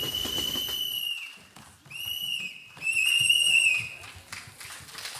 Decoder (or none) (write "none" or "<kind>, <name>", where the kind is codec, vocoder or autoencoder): none